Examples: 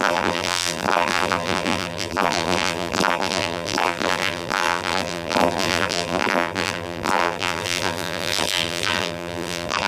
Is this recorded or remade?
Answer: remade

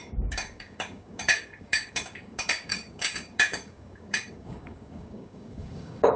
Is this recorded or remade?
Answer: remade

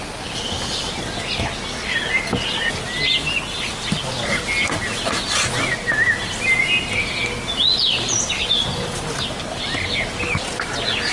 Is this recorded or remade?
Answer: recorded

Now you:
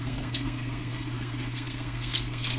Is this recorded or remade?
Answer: remade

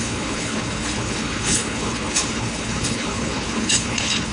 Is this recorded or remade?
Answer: remade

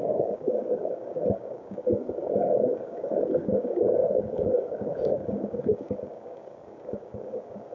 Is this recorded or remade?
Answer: remade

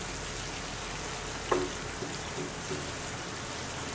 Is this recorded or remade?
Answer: recorded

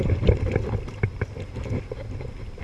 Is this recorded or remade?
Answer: recorded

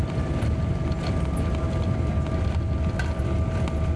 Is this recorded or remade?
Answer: recorded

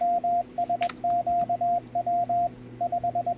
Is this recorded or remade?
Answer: recorded